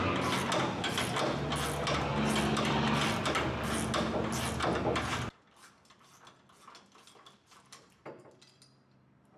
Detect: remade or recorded recorded